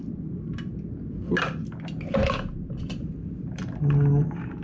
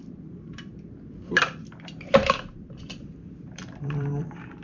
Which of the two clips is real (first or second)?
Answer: first